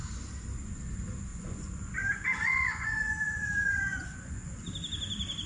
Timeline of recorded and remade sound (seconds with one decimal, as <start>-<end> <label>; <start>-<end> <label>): 0.0-1.3 recorded; 1.3-4.6 remade; 4.6-5.5 recorded